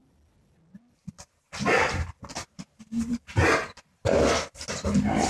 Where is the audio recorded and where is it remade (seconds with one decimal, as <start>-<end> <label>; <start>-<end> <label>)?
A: 0.0-5.3 recorded